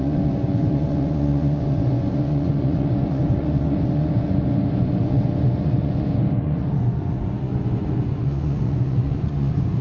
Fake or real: fake